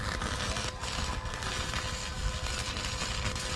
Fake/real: real